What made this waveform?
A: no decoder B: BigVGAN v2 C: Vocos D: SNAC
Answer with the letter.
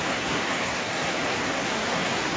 D